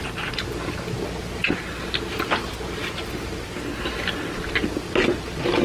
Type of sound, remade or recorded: recorded